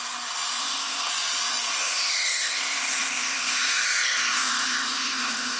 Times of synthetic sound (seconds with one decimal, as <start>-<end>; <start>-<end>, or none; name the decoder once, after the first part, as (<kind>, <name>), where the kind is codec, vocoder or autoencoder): 0.6-1.1 (codec, ZipCodec); 1.8-5.6